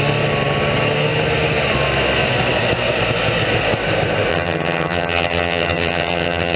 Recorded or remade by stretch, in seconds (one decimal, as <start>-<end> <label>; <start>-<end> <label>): 0.0-4.3 recorded; 4.3-6.6 remade